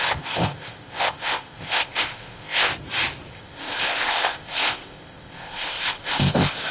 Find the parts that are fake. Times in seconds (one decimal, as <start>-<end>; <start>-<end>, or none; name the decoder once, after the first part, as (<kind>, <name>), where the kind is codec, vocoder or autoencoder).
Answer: 0.0-2.7 (codec, ZipCodec); 3.3-6.7